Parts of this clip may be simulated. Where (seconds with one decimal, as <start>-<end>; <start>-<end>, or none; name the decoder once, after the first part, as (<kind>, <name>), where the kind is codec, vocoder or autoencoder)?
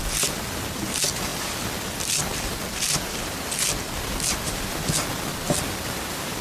none